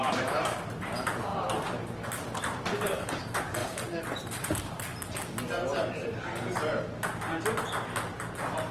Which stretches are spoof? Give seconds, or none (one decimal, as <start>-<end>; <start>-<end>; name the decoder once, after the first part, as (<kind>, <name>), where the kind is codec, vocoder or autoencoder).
0.0-4.9 (vocoder, BigVGAN v2)